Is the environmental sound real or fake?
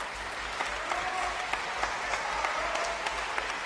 real